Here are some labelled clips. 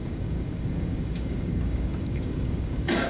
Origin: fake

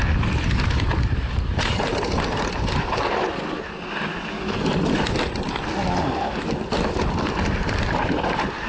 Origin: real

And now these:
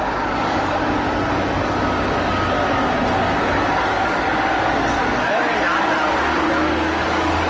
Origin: fake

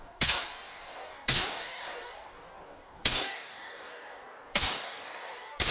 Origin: fake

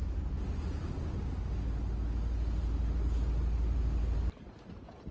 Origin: real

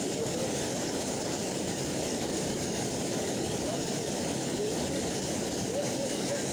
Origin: fake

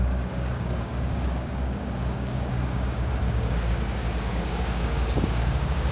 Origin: fake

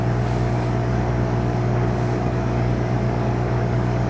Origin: fake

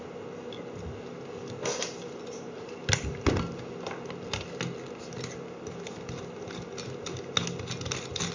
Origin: real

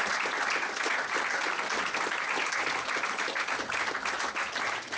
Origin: real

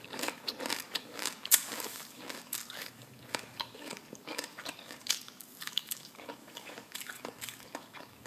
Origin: fake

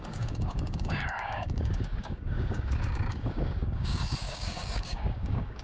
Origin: fake